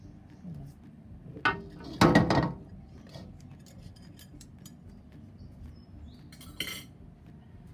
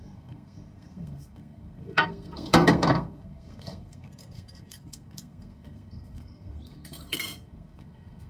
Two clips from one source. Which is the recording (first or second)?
first